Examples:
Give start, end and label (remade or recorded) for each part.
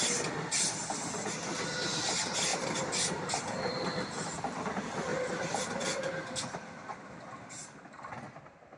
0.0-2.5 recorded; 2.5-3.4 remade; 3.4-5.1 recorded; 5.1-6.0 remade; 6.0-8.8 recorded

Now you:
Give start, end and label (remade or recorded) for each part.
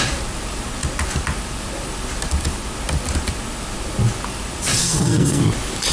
0.0-4.8 recorded; 4.8-5.4 remade; 5.4-5.9 recorded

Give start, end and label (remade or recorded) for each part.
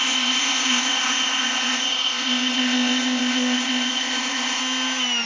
0.0-4.6 remade; 4.6-5.3 recorded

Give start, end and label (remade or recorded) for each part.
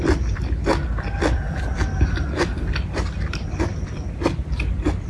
0.0-5.1 recorded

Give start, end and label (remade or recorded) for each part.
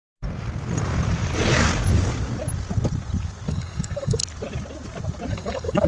0.0-3.5 recorded; 3.5-4.2 remade; 4.2-5.3 recorded; 5.3-5.9 remade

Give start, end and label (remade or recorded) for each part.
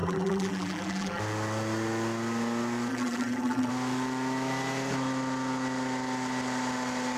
0.0-1.2 remade; 1.2-2.9 recorded; 2.9-3.7 remade; 3.7-7.2 recorded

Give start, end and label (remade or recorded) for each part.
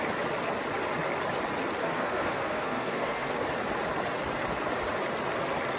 0.0-1.8 recorded; 1.8-3.3 remade; 3.3-5.8 recorded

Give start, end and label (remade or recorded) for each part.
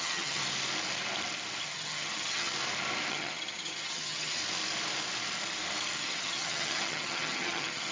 0.0-0.4 remade; 0.4-1.6 recorded; 1.6-2.5 remade; 2.5-3.1 recorded; 3.1-4.4 remade; 4.4-6.0 recorded; 6.0-7.9 remade